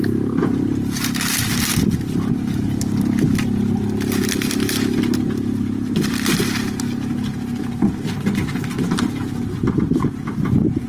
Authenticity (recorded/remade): recorded